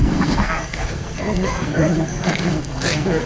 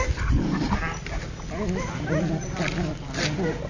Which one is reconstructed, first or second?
first